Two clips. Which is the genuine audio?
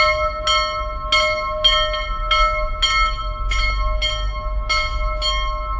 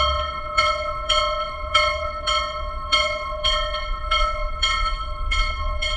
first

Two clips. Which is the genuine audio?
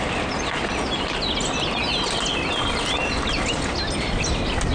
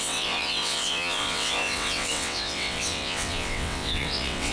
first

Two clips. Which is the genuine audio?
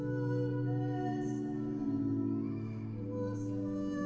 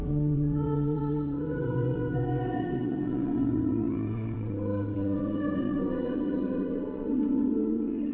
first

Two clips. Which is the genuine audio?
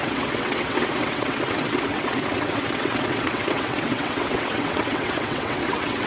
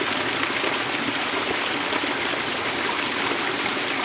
second